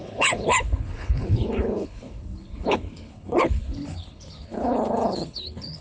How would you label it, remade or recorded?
remade